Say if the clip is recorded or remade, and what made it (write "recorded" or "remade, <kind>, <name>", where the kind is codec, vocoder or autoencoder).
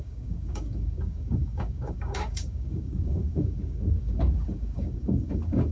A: remade, codec, DAC